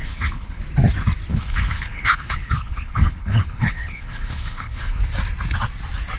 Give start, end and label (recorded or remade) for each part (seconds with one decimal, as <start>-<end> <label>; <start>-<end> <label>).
0.0-0.6 remade; 0.6-1.3 recorded; 1.3-5.0 remade; 5.0-6.2 recorded